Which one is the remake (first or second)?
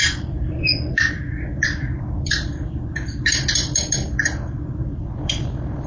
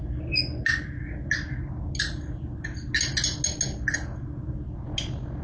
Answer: first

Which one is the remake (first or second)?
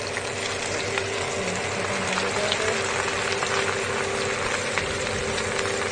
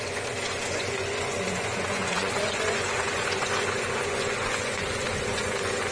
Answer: second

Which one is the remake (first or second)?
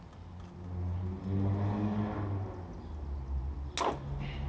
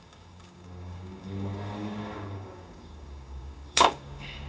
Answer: second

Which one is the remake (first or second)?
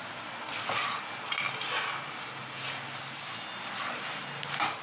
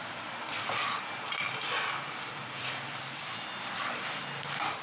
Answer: second